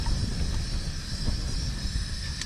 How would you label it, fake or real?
real